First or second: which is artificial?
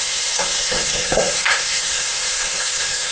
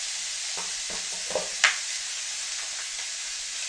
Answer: first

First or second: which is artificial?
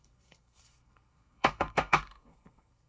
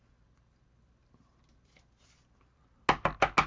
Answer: first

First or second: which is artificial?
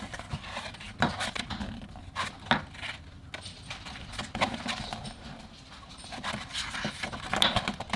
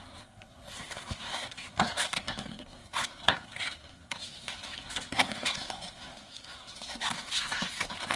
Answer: second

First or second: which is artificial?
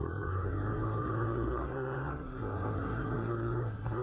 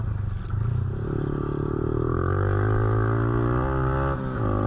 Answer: first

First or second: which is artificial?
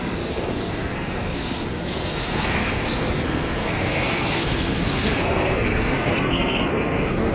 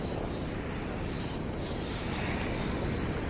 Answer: first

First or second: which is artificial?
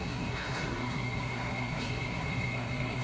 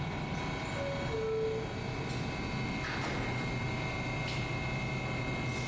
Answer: first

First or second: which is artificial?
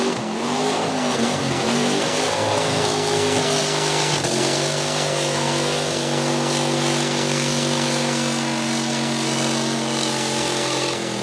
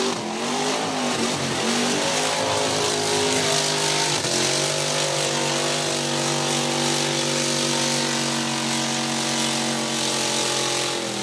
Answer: first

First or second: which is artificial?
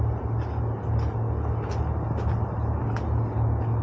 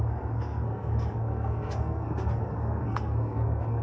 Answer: second